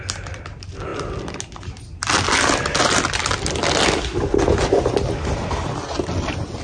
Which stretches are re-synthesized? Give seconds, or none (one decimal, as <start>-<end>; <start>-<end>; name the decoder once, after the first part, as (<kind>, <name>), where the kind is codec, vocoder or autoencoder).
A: none